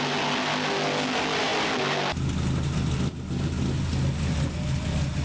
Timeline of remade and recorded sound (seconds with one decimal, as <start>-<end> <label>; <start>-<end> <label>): 0.0-5.2 recorded